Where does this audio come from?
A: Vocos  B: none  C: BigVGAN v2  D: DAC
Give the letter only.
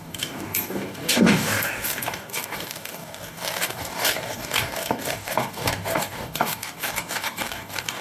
D